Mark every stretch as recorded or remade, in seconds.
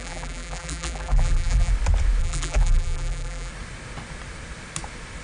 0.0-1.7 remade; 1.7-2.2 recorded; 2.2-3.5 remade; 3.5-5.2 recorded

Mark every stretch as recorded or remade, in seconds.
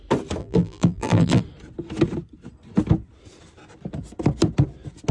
0.0-0.4 recorded; 0.4-1.4 remade; 1.4-5.1 recorded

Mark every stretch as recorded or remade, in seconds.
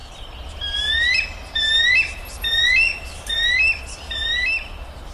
0.0-5.1 recorded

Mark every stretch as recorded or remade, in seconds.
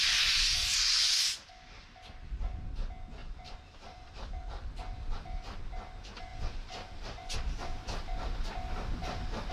0.0-3.2 recorded; 3.2-4.7 remade; 4.7-6.3 recorded; 6.3-7.5 remade; 7.5-9.5 recorded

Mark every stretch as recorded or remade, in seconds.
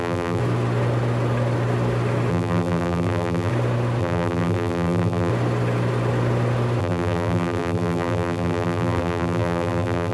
0.0-0.4 remade; 0.4-2.3 recorded; 2.3-3.5 remade; 3.5-4.0 recorded; 4.0-5.3 remade; 5.3-6.8 recorded; 6.8-10.1 remade